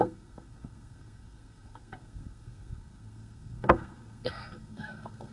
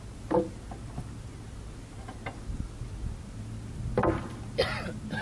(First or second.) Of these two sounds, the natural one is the second